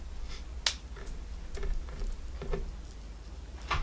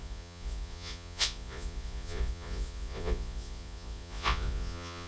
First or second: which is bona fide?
first